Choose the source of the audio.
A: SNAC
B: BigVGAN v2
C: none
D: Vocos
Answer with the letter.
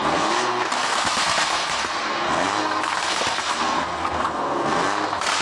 A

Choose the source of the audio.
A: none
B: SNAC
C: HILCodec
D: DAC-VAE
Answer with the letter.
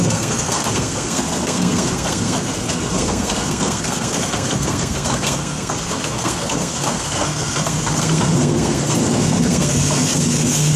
B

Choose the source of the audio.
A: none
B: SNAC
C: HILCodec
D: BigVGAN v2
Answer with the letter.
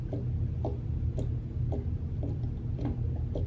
A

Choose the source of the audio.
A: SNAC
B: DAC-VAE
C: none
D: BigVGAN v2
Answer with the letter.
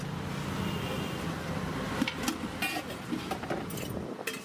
C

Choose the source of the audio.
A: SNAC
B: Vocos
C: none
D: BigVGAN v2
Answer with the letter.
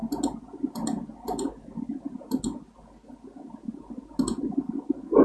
C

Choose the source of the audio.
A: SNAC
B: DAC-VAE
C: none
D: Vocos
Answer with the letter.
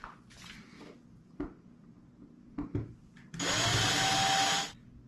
C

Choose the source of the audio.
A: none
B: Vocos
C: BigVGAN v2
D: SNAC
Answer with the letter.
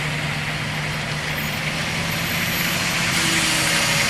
A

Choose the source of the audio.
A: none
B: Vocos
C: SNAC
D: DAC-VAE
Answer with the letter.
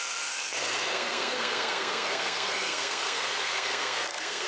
C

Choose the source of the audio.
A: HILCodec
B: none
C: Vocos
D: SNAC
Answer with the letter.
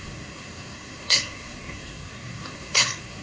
D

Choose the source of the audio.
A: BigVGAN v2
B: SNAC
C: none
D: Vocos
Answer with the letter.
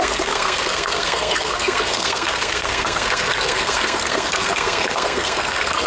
B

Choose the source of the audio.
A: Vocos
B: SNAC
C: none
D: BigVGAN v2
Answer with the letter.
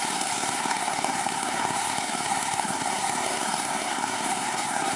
B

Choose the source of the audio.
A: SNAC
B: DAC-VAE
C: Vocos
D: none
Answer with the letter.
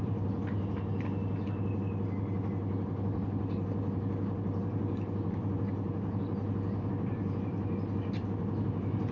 D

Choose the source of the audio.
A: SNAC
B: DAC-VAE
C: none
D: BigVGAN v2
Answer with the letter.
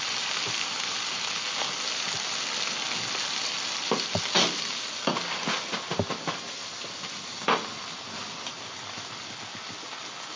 C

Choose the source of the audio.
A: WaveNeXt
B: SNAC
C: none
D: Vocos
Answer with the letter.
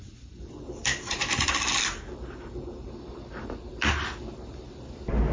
C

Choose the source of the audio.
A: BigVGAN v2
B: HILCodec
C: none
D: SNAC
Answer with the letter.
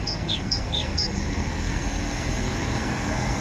D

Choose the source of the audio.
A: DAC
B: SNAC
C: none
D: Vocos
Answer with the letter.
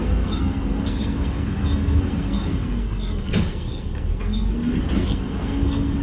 B